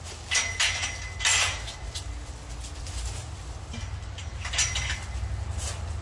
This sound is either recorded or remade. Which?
recorded